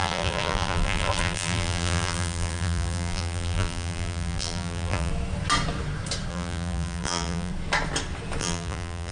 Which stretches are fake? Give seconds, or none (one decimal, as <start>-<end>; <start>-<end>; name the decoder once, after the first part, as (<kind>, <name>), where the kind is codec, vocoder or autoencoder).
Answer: 0.0-5.1 (vocoder, BigVGAN v2); 6.3-7.5; 8.4-9.1